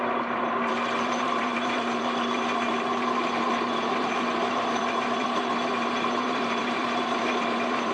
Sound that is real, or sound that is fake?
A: fake